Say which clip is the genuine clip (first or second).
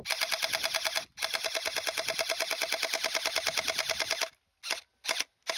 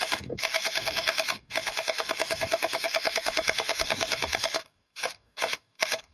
first